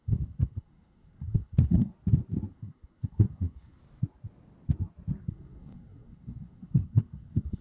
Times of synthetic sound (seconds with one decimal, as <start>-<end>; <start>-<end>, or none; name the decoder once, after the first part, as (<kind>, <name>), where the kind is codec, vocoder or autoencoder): 0.0-1.9 (codec, SNAC); 2.5-3.8; 5.2-7.6